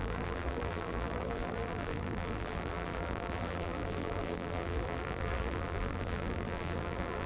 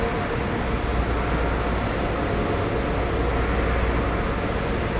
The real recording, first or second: second